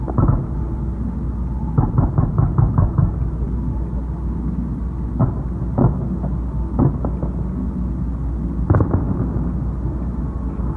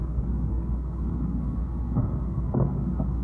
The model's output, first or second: second